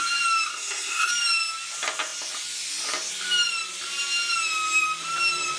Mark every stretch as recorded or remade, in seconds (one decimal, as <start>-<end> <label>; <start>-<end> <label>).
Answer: 0.0-0.5 recorded; 0.5-1.1 remade; 1.1-5.6 recorded